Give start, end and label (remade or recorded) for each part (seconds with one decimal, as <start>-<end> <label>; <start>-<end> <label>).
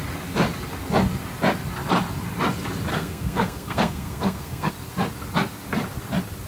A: 0.0-2.9 recorded; 2.9-4.7 remade; 4.7-6.5 recorded